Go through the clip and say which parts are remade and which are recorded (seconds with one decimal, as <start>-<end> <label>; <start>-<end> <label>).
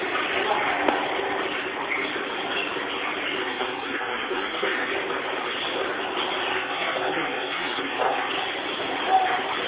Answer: 0.0-3.4 recorded; 3.4-4.9 remade; 4.9-6.5 recorded; 6.5-8.3 remade; 8.3-9.7 recorded